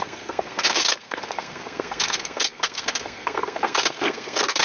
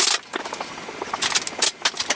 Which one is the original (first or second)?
second